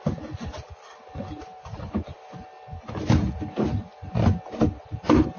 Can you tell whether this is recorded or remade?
recorded